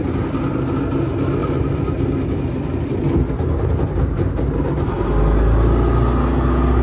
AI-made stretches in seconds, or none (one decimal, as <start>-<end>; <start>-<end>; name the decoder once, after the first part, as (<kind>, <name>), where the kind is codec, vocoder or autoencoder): none